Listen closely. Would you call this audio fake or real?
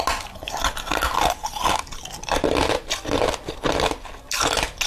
real